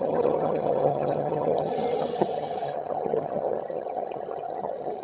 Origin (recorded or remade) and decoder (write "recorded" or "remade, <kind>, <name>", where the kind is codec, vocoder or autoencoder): remade, vocoder, HiFi-GAN